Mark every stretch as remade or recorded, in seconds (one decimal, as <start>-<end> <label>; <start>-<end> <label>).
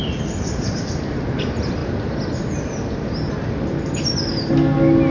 0.0-5.1 recorded